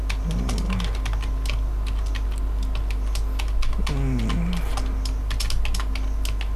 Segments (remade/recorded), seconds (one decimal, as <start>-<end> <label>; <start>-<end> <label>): 0.0-6.6 recorded